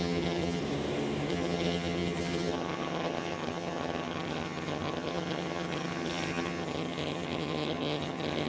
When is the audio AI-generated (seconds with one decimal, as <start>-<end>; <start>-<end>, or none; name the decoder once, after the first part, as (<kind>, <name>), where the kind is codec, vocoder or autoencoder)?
0.0-0.6 (vocoder, HiFi-GAN); 1.3-8.5